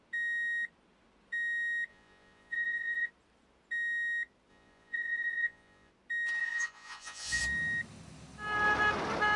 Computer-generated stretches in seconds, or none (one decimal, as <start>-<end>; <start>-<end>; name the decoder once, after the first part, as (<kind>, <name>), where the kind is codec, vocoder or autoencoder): 1.9-3.1 (vocoder, Vocos); 4.5-5.9; 6.4-7.4